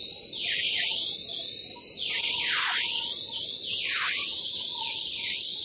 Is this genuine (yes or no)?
yes